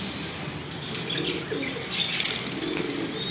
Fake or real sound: real